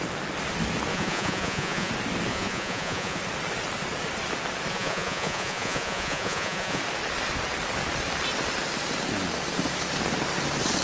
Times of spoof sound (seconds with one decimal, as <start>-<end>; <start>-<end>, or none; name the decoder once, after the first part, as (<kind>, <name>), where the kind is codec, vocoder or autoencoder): 0.9-1.9 (vocoder, Vocos); 2.3-3.2; 4.7-6.8